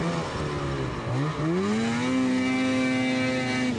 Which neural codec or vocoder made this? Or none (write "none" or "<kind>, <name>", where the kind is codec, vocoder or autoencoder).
none